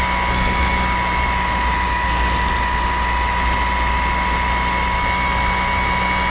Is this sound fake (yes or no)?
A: no